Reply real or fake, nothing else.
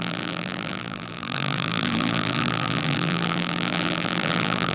fake